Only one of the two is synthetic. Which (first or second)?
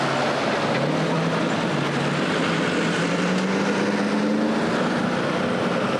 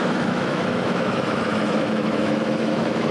second